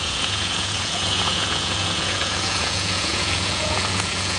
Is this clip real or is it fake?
fake